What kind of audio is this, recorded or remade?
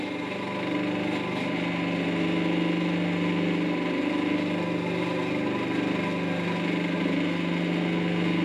recorded